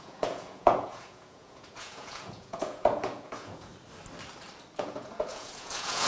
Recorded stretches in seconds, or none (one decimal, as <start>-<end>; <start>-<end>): 3.7-4.8